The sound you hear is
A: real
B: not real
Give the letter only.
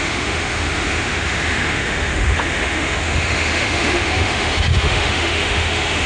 B